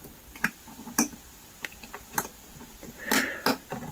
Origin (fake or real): real